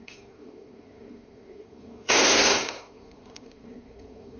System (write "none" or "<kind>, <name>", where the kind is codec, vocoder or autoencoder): codec, SNAC